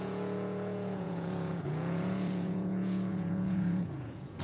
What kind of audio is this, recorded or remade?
remade